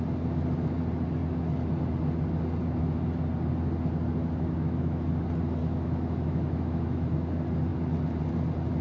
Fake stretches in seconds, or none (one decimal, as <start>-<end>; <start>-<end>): 4.2-5.1; 5.6-7.3